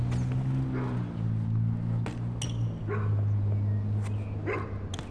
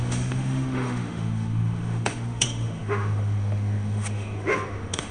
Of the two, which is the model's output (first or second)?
second